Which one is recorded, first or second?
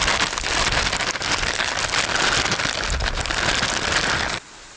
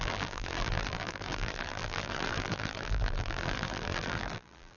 first